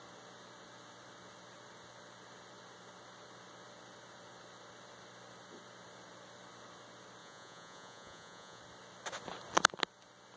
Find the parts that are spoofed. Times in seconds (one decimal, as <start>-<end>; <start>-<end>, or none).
7.2-8.6